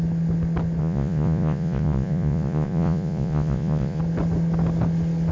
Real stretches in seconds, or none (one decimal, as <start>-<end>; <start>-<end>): 0.0-0.8; 4.0-5.3